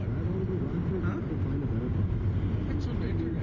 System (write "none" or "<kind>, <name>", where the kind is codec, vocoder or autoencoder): none